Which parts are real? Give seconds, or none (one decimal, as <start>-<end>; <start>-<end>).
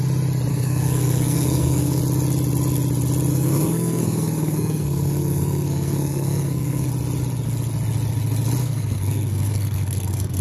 0.0-0.5; 2.0-3.3; 6.9-8.6